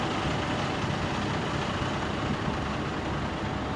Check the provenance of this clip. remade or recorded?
recorded